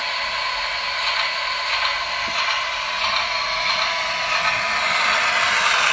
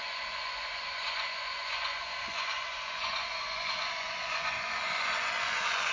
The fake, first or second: second